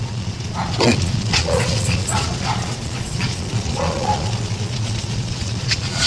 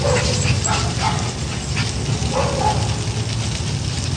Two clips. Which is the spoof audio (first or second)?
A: first